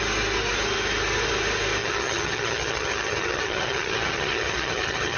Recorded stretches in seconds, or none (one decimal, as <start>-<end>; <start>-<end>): 0.0-1.8